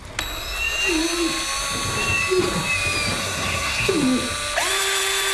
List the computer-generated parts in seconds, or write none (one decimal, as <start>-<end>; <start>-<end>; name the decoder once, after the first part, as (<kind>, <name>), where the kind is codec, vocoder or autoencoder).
3.2-3.9 (codec, SNAC)